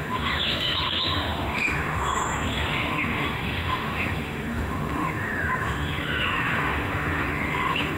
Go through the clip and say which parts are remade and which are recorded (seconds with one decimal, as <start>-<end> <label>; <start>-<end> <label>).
0.0-8.0 remade